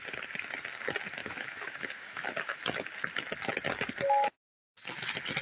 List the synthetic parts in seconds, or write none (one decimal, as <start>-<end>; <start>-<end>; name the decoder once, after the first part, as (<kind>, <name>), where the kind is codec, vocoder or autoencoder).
1.2-2.6 (autoencoder, DAC-VAE)